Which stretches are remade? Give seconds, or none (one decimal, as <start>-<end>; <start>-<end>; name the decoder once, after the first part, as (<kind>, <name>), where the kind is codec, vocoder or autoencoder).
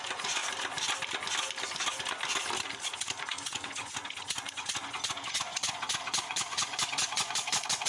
0.0-0.4 (vocoder, Vocos); 3.2-7.9